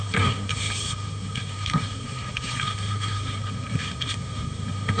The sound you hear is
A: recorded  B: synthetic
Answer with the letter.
B